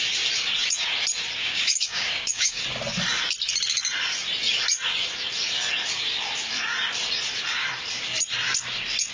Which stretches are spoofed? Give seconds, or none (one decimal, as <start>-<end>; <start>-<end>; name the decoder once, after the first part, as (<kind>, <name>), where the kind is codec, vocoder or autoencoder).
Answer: 1.4-2.6 (codec, DAC)